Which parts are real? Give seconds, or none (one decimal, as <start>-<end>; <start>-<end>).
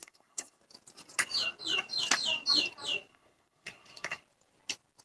0.6-3.1; 4.2-5.0